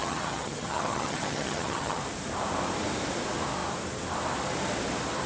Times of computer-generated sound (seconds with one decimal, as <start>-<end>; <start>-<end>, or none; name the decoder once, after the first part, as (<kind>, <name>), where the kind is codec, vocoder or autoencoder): 0.0-2.0 (vocoder, HiFi-GAN)

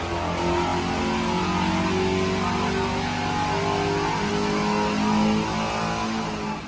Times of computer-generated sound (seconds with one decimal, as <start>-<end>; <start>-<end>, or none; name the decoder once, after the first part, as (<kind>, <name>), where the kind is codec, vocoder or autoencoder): none